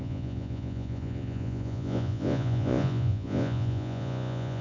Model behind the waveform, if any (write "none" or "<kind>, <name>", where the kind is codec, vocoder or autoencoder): vocoder, Vocos